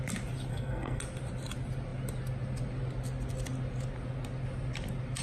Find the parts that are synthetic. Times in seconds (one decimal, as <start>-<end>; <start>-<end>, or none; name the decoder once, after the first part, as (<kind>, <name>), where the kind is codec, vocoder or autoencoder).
0.5-1.0 (codec, SNAC)